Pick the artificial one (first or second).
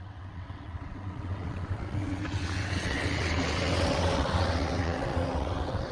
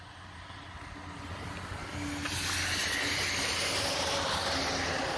first